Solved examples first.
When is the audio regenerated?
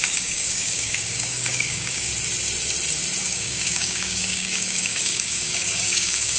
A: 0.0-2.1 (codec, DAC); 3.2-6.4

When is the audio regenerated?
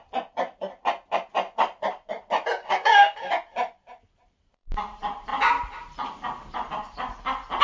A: 2.6-3.3 (codec, DAC)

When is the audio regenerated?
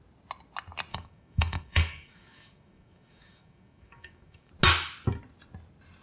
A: 0.9-4.5 (codec, DAC)